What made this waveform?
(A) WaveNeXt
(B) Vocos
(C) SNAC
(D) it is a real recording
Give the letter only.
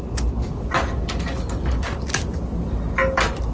D